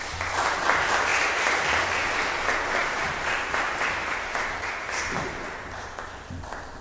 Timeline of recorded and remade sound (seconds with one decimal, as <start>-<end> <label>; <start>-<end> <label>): 0.0-2.8 recorded; 2.8-5.9 remade; 5.9-6.8 recorded

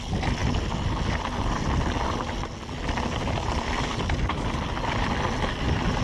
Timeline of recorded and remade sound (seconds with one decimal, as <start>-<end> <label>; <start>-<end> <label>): 0.0-6.0 recorded

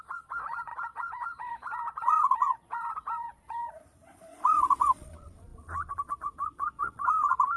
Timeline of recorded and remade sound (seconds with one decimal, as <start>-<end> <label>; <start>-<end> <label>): 0.0-7.6 remade

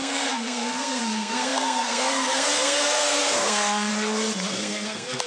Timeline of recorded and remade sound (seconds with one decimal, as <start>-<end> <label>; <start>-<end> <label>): 0.0-3.9 remade; 3.9-4.5 recorded; 4.5-5.3 remade

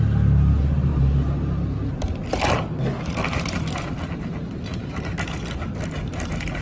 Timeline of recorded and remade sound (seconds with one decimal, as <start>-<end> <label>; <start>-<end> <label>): 0.0-4.7 recorded; 4.7-5.4 remade; 5.4-6.6 recorded

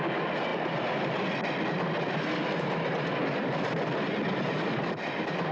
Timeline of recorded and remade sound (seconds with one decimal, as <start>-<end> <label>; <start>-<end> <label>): 0.0-5.5 recorded

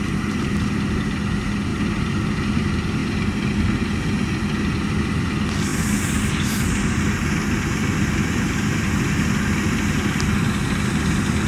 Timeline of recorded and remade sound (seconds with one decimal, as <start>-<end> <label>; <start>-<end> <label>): 0.0-1.7 recorded; 1.7-2.4 remade; 2.4-5.7 recorded; 5.7-9.4 remade; 9.4-11.5 recorded